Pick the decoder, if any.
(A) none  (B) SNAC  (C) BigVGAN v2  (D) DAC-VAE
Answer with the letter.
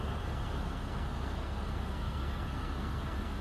B